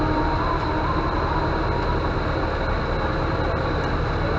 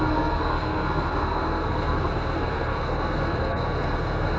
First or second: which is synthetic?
second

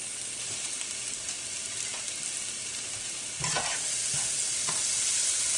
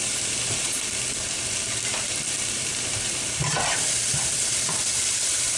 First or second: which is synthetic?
second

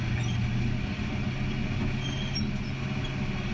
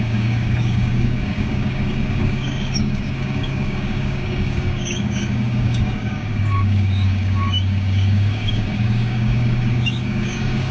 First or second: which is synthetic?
second